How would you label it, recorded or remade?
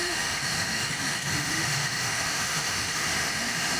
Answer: remade